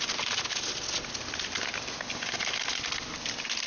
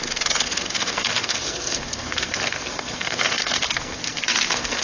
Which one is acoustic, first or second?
first